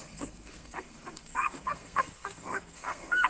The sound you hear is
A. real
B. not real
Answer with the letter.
B